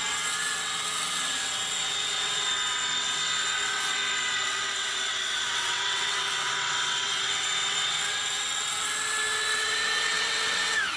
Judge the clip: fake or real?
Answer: fake